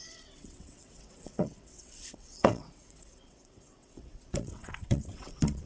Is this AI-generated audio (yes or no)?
yes